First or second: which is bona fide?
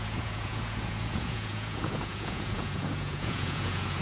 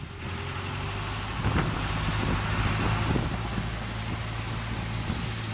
second